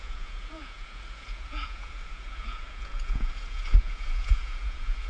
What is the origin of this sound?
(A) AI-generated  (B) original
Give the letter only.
A